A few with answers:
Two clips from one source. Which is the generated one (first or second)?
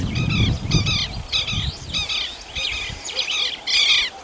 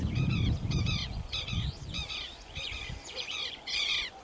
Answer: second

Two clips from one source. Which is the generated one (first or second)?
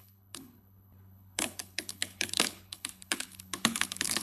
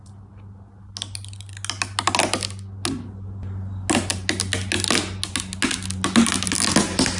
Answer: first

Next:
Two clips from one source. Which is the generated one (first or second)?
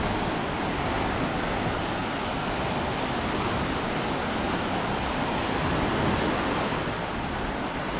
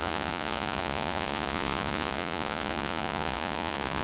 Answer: second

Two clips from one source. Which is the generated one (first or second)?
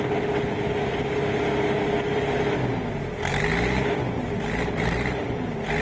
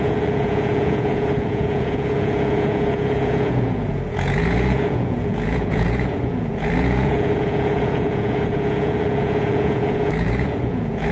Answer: second